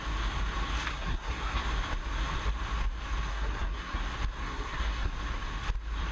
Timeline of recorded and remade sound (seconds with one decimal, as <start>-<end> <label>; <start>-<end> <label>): 0.0-0.9 recorded; 0.9-1.6 remade; 1.6-3.3 recorded; 3.3-4.0 remade; 4.0-4.4 recorded; 4.4-5.1 remade; 5.1-6.1 recorded